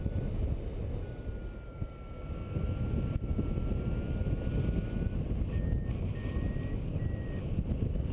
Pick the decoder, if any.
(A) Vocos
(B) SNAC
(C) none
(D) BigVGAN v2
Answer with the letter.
C